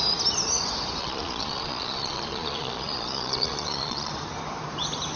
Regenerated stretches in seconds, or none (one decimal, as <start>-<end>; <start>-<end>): 1.0-4.1